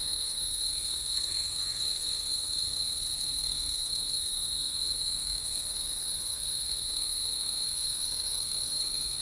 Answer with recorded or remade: remade